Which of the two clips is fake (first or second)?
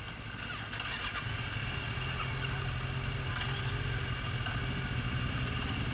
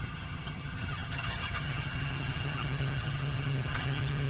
second